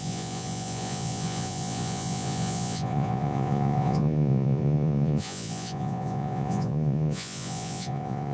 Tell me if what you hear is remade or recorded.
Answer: remade